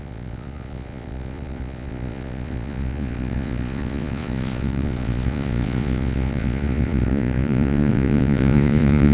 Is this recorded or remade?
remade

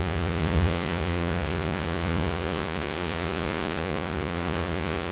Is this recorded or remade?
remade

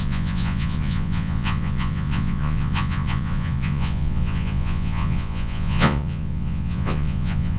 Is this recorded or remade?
remade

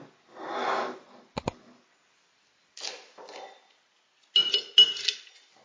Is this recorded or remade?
recorded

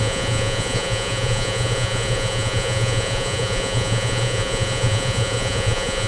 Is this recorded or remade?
remade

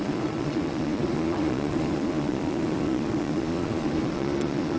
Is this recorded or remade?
remade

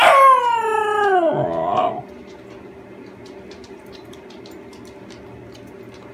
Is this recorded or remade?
recorded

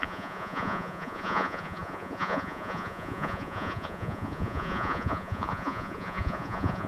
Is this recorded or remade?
remade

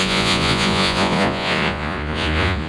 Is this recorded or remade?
remade